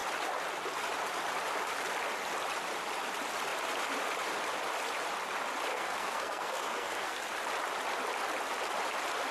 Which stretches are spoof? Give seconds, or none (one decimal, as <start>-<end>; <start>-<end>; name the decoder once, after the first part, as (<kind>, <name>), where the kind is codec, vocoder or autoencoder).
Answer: 5.7-7.2 (codec, SNAC)